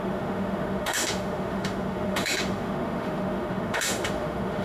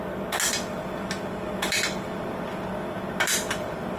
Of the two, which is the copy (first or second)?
first